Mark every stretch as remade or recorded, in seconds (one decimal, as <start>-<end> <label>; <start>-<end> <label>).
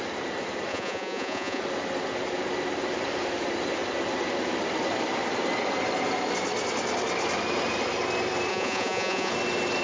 0.0-0.7 recorded; 0.7-1.6 remade; 1.6-8.5 recorded; 8.5-9.3 remade; 9.3-9.8 recorded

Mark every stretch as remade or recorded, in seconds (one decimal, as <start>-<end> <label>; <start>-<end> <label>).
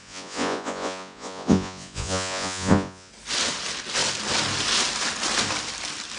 0.0-3.1 remade; 3.1-6.2 recorded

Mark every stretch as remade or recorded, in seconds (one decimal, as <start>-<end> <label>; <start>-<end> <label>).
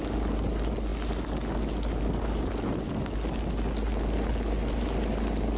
0.0-5.6 recorded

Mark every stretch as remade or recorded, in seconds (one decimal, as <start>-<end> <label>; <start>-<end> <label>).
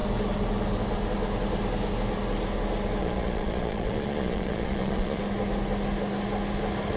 0.0-3.0 recorded; 3.0-5.2 remade; 5.2-7.0 recorded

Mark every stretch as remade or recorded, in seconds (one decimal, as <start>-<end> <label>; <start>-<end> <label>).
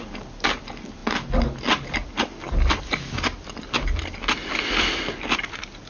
0.0-5.9 recorded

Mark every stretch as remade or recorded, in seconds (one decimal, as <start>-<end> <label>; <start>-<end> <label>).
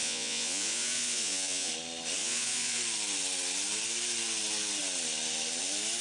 0.0-1.7 remade; 1.7-2.2 recorded; 2.2-2.8 remade; 2.8-6.0 recorded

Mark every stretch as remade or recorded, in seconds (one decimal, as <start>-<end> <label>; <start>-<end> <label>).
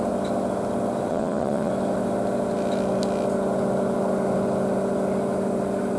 0.0-1.1 recorded; 1.1-1.7 remade; 1.7-6.0 recorded